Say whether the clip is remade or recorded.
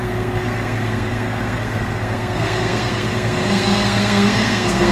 remade